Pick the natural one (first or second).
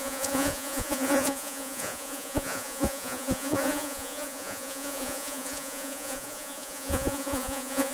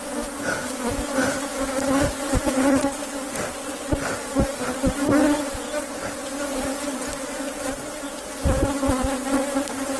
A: second